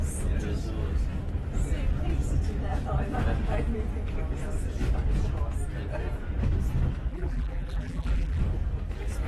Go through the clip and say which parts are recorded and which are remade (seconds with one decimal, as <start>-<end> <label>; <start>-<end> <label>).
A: 0.0-7.1 recorded; 7.1-8.4 remade; 8.4-9.3 recorded